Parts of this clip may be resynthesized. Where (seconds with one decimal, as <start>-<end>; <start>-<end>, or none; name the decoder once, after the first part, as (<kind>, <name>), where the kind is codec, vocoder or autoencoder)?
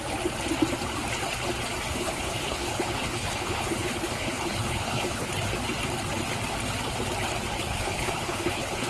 1.9-5.3 (codec, HILCodec); 7.7-8.9